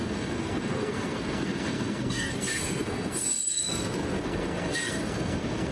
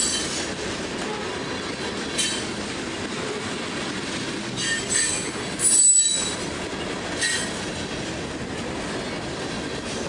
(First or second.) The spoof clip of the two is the first